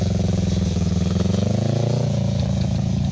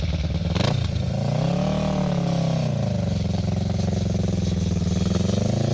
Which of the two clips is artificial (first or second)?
first